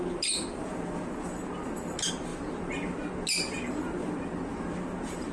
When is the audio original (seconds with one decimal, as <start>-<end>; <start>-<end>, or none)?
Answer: 0.0-5.3